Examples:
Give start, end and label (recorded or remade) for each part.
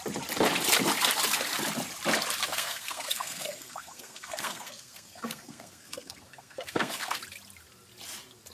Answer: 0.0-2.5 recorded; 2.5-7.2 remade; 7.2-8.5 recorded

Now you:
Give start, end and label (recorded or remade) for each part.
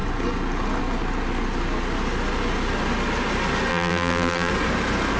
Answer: 0.0-3.7 recorded; 3.7-4.5 remade; 4.5-5.2 recorded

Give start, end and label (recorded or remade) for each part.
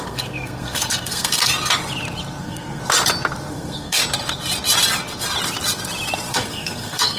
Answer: 0.0-1.5 remade; 1.5-2.4 recorded; 2.4-2.8 remade; 2.8-3.5 recorded; 3.5-4.0 remade; 4.0-6.3 recorded; 6.3-7.2 remade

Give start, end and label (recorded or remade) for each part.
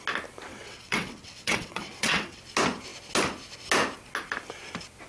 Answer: 0.0-0.5 recorded; 0.5-2.4 remade; 2.4-5.1 recorded